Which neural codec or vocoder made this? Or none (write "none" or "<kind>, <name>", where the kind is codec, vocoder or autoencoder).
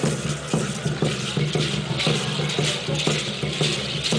none